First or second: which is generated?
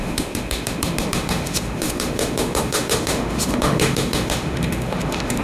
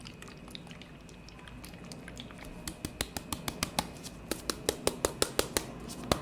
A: first